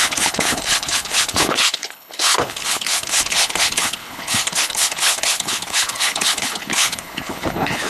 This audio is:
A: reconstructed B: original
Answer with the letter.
A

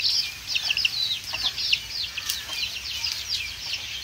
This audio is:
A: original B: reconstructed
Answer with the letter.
A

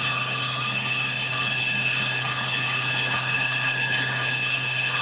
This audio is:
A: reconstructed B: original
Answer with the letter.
A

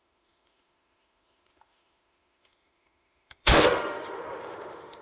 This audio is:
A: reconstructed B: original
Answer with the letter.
A